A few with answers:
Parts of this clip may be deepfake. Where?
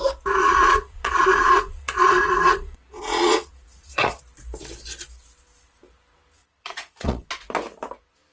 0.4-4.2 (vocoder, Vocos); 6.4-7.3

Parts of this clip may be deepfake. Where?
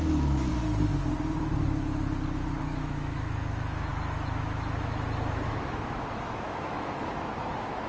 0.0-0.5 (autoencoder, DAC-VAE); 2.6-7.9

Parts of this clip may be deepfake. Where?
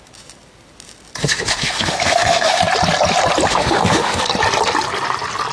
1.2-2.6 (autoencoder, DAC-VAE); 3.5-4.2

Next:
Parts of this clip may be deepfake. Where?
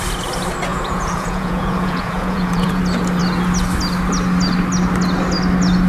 0.7-2.8 (vocoder, Vocos)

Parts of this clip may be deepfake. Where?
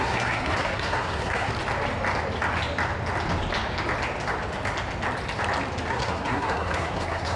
0.0-1.5 (codec, SNAC); 5.9-7.4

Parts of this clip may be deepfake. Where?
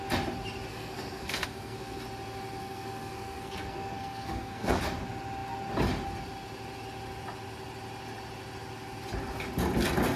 0.7-2.0 (codec, SNAC); 2.6-4.8